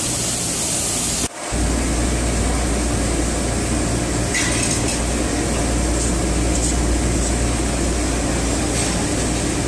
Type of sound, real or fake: real